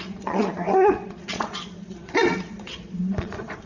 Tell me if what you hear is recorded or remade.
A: remade